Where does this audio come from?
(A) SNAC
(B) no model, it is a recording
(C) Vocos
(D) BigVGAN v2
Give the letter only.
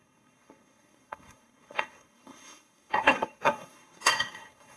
A